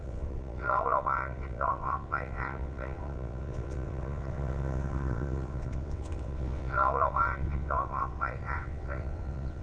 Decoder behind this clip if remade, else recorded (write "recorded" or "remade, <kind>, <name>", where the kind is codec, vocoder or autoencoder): remade, vocoder, WaveNeXt